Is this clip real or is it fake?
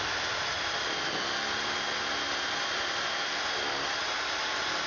real